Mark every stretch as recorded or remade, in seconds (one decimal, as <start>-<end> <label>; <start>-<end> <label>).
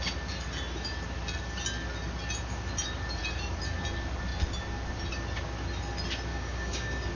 0.0-6.3 recorded; 6.3-7.1 remade